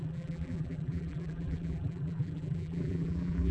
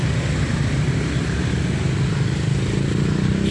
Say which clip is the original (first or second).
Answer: second